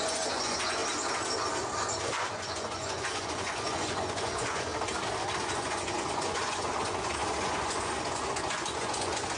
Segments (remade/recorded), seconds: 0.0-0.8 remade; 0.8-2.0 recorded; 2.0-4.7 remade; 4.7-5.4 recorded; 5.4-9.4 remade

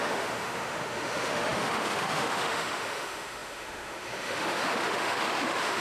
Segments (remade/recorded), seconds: 0.0-5.8 remade

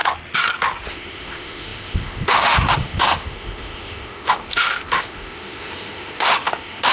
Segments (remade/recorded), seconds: 0.0-0.9 recorded; 0.9-6.9 remade

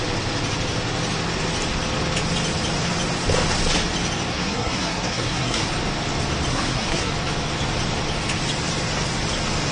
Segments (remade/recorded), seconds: 0.0-4.3 recorded; 4.3-5.7 remade; 5.7-6.5 recorded; 6.5-7.1 remade; 7.1-9.7 recorded

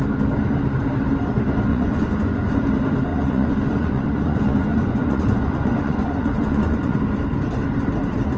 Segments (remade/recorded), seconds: 0.0-1.7 recorded; 1.7-2.6 remade; 2.6-3.1 recorded; 3.1-7.0 remade; 7.0-8.4 recorded